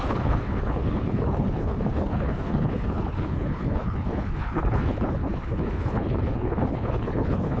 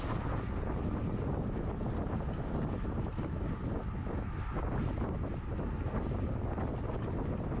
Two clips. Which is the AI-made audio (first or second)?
first